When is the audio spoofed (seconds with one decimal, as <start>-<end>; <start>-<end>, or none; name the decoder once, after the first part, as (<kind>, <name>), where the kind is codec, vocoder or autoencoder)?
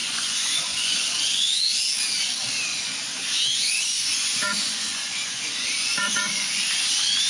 0.0-1.6 (vocoder, Vocos); 2.7-6.6